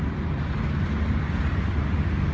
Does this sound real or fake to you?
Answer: real